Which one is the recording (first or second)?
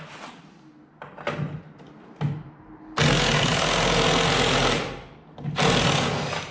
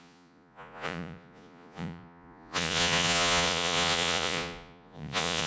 first